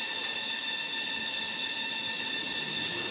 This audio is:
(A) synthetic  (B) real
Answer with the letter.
B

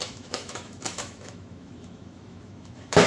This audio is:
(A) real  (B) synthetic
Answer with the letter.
B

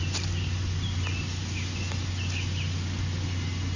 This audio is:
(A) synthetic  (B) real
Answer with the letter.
B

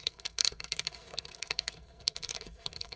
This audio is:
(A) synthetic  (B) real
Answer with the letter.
A